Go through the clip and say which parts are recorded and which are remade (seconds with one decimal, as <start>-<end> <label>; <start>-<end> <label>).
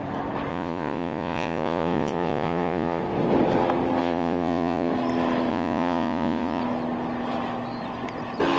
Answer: 0.0-0.5 recorded; 0.5-3.0 remade; 3.0-4.0 recorded; 4.0-4.9 remade; 4.9-5.5 recorded; 5.5-6.6 remade; 6.6-8.6 recorded